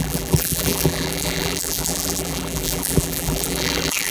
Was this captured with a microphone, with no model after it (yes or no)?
no